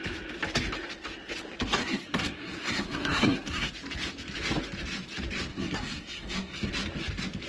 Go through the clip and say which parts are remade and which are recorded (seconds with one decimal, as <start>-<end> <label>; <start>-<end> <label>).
0.0-1.8 recorded; 1.8-3.7 remade; 3.7-5.5 recorded; 5.5-6.7 remade; 6.7-7.5 recorded